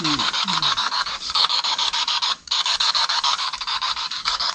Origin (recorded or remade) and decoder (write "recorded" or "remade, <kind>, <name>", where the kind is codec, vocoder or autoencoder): remade, codec, DAC